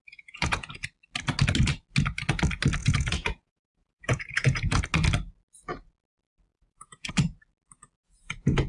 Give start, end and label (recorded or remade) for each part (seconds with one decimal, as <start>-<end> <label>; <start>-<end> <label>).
0.0-0.7 remade; 0.7-2.8 recorded; 2.8-4.8 remade; 4.8-6.5 recorded; 6.5-7.1 remade; 7.1-8.0 recorded; 8.0-8.7 remade

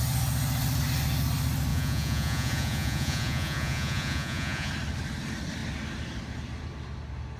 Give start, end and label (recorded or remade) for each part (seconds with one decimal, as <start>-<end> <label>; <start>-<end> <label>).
0.0-1.7 recorded; 1.7-4.7 remade; 4.7-7.4 recorded

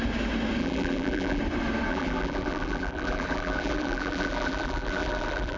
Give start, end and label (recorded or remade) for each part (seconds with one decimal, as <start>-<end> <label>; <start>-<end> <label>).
0.0-0.6 recorded; 0.6-1.4 remade; 1.4-1.9 recorded; 1.9-5.6 remade

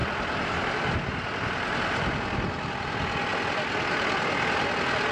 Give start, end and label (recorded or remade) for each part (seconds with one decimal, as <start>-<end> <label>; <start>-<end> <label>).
0.0-5.1 recorded

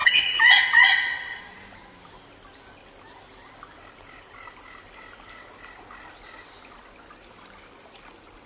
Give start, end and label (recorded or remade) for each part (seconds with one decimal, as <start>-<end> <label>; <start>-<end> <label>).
0.0-1.4 remade; 1.4-8.5 recorded

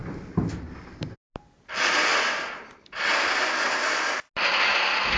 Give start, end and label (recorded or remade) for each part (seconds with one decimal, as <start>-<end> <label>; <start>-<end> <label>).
0.0-5.2 recorded

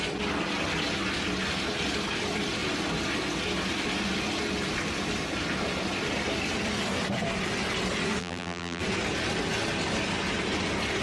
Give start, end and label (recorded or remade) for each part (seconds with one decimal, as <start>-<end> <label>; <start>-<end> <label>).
0.0-8.2 recorded; 8.2-8.8 remade; 8.8-11.0 recorded